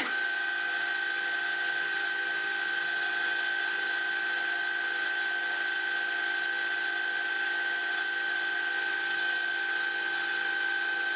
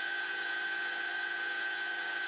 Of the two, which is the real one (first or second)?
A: first